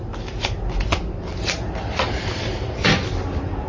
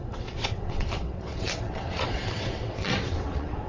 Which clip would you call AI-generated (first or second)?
second